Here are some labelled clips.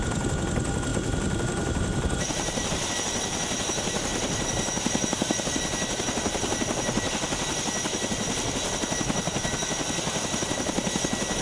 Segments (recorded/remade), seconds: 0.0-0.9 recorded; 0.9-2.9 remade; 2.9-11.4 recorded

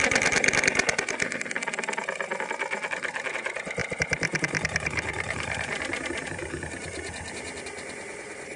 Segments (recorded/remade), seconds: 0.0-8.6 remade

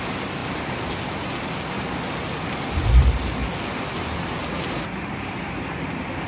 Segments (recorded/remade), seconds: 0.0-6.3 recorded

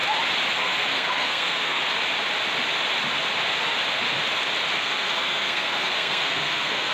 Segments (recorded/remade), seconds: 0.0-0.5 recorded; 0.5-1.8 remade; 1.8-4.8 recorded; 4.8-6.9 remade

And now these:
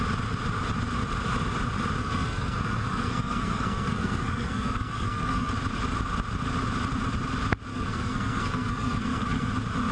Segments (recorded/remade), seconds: 0.0-2.0 recorded; 2.0-5.5 remade; 5.5-7.7 recorded; 7.7-9.5 remade; 9.5-9.9 recorded

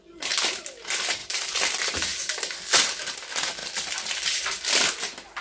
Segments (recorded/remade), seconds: 0.0-1.2 recorded; 1.2-1.7 remade; 1.7-3.6 recorded; 3.6-4.6 remade; 4.6-5.4 recorded